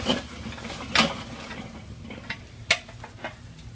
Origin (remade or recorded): recorded